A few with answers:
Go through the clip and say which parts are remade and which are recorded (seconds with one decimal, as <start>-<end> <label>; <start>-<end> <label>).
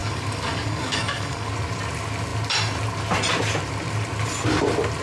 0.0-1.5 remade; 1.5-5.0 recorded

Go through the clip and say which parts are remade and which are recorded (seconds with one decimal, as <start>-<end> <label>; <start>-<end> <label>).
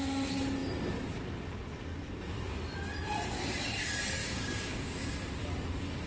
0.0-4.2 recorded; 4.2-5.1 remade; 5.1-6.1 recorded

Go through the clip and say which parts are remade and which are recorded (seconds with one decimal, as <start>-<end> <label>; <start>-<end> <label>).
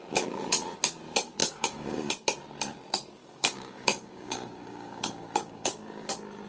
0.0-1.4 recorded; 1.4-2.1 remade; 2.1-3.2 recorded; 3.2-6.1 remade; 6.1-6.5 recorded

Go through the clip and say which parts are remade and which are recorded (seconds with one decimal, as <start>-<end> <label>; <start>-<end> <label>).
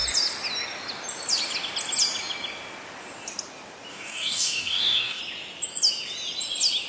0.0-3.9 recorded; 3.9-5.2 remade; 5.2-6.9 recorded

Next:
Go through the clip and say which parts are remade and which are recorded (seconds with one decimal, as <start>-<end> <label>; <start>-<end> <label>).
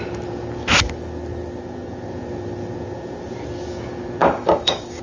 0.0-4.2 recorded; 4.2-5.0 remade